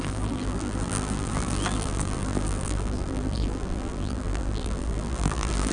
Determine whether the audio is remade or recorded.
remade